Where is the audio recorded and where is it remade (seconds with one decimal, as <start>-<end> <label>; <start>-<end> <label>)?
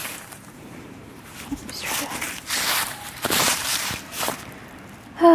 0.0-1.4 remade; 1.4-2.2 recorded; 2.2-4.3 remade; 4.3-5.3 recorded